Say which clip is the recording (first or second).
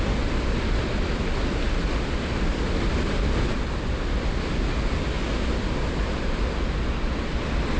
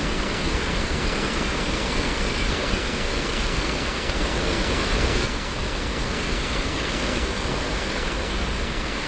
first